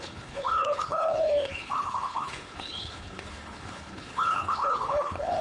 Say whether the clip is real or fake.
fake